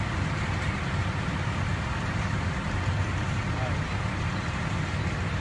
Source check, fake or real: real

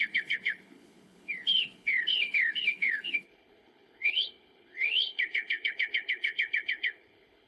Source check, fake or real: fake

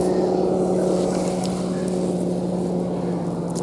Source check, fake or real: real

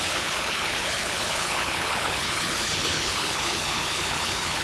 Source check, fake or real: fake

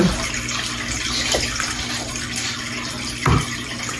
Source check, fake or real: real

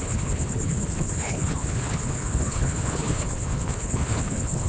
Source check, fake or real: fake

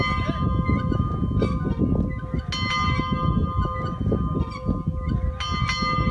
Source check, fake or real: real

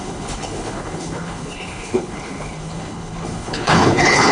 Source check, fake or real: fake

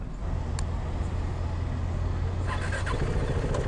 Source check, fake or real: real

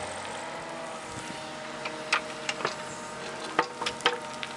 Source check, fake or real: real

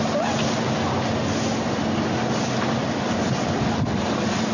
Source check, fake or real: real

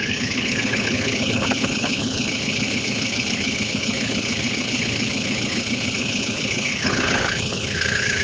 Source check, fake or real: fake